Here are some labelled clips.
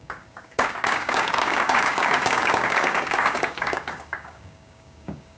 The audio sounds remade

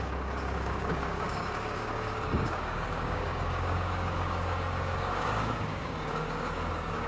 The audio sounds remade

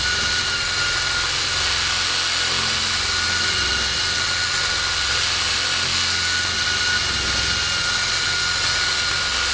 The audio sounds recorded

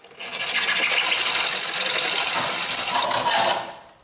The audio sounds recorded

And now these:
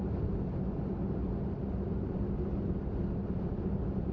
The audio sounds recorded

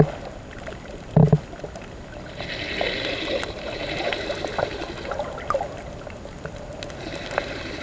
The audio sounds recorded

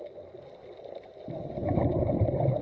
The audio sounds recorded